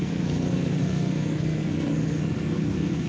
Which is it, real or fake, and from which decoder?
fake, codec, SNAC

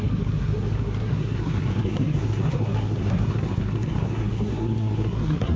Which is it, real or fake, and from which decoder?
fake, codec, SNAC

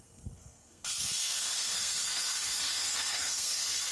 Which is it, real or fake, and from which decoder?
fake, codec, SNAC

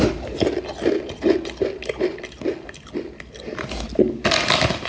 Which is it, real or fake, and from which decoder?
real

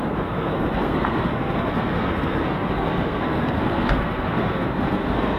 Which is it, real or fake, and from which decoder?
fake, codec, SNAC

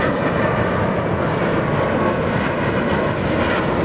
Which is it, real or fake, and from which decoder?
real